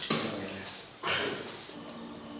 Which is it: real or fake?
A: real